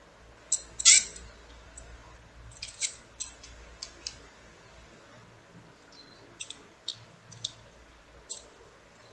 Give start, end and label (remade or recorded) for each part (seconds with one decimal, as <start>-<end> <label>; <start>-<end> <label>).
0.0-9.1 recorded